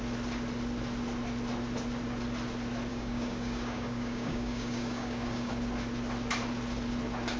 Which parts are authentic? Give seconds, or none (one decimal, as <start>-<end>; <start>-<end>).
0.0-2.9; 5.5-7.4